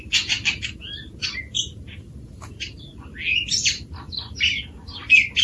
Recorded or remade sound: recorded